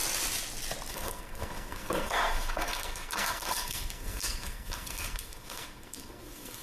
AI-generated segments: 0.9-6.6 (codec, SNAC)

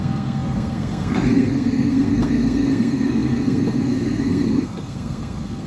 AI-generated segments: 0.0-5.7 (codec, SNAC)

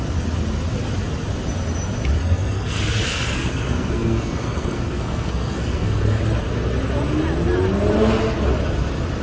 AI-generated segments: 2.2-6.2 (codec, SNAC)

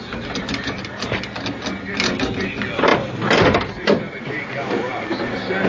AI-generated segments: none

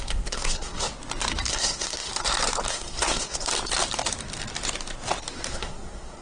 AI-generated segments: 0.0-0.9 (codec, SNAC); 1.5-2.1; 2.7-3.5; 5.5-6.2

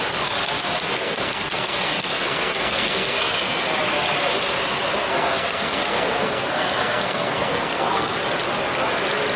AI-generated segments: 1.0-3.6 (codec, SNAC); 5.0-8.2

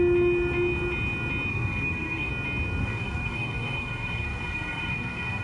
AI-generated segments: 1.5-2.3 (codec, SNAC); 2.8-5.4